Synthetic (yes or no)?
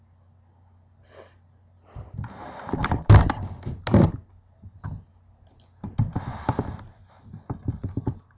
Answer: no